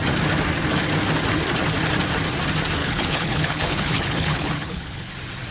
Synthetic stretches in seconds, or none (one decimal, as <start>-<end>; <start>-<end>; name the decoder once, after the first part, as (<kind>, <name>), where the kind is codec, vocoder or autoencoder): 2.8-5.1 (codec, HILCodec)

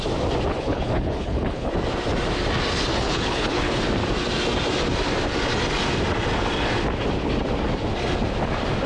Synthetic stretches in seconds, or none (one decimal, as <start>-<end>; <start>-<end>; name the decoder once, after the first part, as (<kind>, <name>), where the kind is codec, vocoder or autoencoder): 0.5-1.7 (codec, HILCodec); 2.9-3.8